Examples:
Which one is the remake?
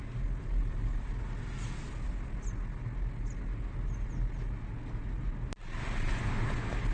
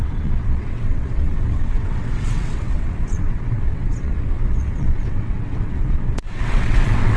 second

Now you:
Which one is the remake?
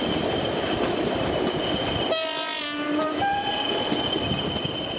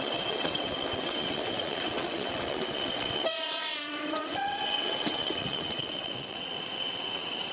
second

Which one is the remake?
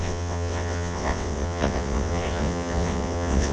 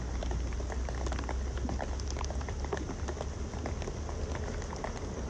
first